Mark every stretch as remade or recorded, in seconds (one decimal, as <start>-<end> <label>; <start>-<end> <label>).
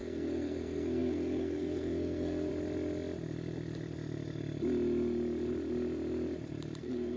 0.0-2.5 remade; 2.5-6.8 recorded; 6.8-7.2 remade